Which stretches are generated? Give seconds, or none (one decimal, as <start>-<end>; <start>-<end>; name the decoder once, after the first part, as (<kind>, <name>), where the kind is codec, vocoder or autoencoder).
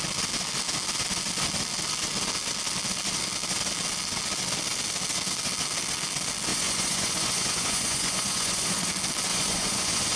6.5-8.9 (vocoder, Vocos); 9.3-10.2